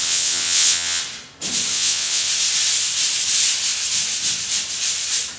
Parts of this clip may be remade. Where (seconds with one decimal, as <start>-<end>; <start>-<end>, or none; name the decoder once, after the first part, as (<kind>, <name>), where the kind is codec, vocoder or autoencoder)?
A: 0.0-1.0 (vocoder, WaveNeXt); 1.7-2.3